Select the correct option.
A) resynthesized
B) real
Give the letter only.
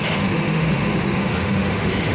A